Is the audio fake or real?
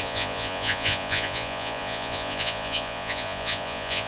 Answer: fake